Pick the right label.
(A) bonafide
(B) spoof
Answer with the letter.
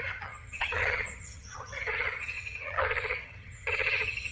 B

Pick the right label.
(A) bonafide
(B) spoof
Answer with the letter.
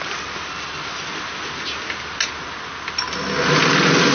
A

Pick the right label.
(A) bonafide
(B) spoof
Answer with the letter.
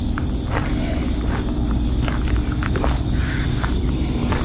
A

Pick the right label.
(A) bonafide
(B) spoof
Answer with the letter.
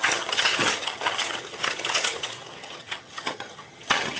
B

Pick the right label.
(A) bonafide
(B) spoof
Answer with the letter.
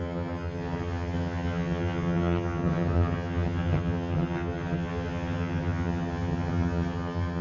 B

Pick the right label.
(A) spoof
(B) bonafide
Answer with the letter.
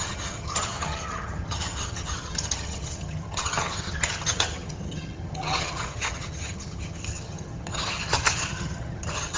A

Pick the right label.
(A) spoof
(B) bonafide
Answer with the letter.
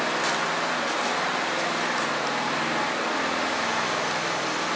B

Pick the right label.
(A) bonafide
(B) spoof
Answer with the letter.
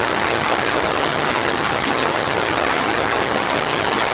B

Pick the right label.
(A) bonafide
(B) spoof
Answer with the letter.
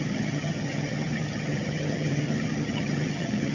B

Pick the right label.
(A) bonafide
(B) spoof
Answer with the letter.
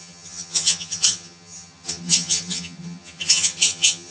B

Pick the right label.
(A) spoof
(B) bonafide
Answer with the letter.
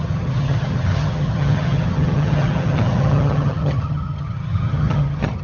A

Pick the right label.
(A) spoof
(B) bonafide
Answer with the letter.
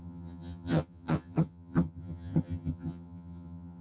A